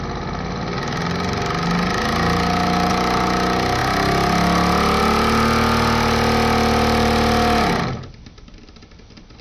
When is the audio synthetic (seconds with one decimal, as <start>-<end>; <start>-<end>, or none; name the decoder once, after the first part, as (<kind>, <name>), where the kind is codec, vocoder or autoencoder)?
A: none